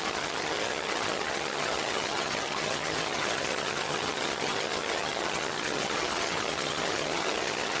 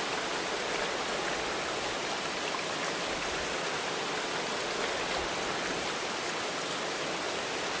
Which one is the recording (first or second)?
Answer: second